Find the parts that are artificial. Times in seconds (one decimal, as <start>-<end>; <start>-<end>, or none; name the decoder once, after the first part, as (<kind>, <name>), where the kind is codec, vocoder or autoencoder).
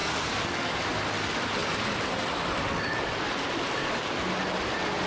0.0-1.0 (codec, DAC)